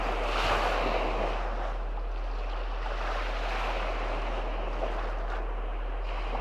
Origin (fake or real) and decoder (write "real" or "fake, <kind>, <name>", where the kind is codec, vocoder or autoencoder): real